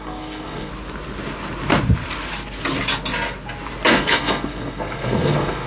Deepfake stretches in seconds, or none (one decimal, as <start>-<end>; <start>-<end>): 0.0-0.7; 3.9-5.7